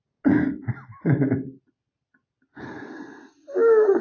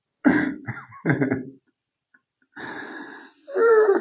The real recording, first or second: first